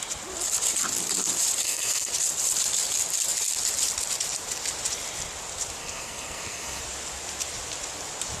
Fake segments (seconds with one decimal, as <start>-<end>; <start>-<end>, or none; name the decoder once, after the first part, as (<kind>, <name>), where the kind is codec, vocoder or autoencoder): 1.6-2.1 (codec, SNAC); 5.8-6.8